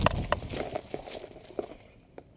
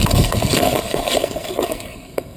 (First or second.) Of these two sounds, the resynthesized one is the second